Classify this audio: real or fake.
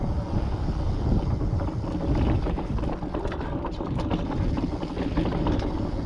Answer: real